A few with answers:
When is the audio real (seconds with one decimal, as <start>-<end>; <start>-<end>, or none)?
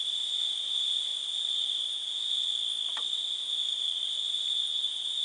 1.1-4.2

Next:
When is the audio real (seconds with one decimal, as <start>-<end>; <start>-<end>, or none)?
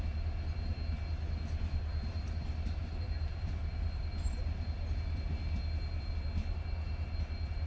0.0-2.8; 4.0-7.7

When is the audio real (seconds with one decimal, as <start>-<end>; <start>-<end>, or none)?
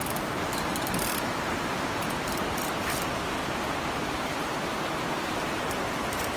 0.4-0.9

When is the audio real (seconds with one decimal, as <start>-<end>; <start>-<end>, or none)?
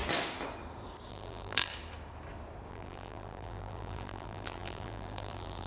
0.0-1.1; 1.7-2.7